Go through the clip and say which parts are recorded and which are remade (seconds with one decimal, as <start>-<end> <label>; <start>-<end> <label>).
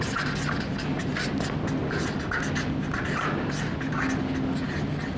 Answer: 0.0-5.2 recorded